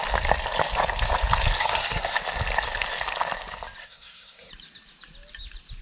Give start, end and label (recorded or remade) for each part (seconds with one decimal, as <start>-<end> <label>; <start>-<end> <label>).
0.0-1.6 recorded; 1.6-2.2 remade; 2.2-3.8 recorded; 3.8-4.5 remade; 4.5-5.8 recorded